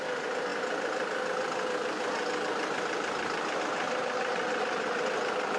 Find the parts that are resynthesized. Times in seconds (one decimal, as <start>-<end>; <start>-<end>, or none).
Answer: none